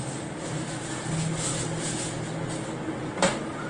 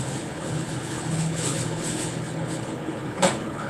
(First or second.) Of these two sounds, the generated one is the second